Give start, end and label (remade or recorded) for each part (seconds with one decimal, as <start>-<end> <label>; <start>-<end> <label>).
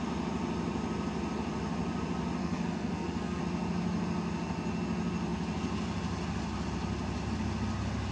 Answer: 0.0-2.4 recorded; 2.4-3.4 remade; 3.4-8.1 recorded